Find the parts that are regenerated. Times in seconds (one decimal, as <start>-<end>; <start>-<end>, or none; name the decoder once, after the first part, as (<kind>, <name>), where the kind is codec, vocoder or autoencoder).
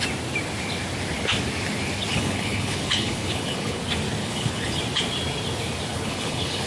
2.1-3.8 (codec, HILCodec); 4.2-4.8; 5.9-6.7